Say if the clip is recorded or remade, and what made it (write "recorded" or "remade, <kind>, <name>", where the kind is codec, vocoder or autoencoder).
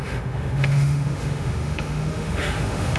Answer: remade, autoencoder, DAC-VAE